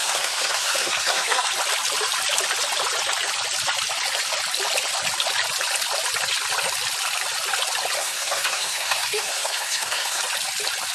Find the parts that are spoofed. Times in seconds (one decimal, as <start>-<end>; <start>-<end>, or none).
0.0-1.5; 8.0-10.2